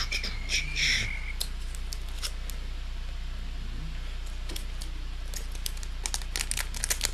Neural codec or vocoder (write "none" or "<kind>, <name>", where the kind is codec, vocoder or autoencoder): none